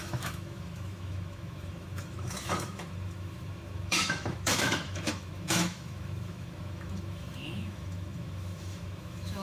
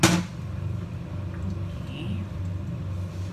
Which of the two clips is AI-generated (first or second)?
first